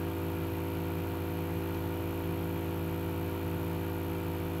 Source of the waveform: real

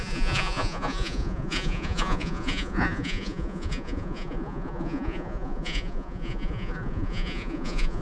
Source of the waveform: fake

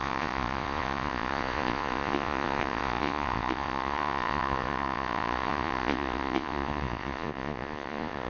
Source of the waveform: fake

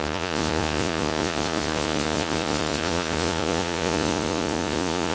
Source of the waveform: fake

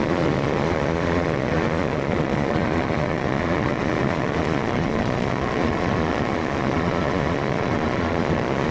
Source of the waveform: fake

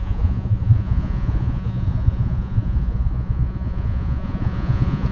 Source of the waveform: fake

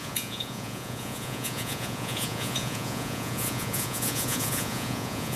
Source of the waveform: fake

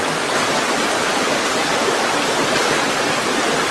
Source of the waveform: real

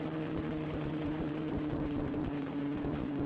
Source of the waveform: fake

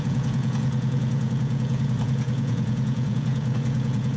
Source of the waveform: fake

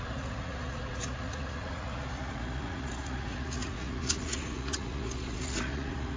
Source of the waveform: fake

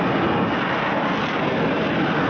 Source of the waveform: real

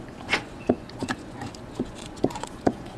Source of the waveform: fake